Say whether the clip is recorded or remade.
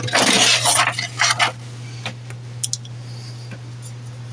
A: recorded